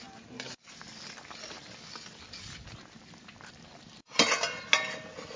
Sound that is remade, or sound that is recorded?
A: recorded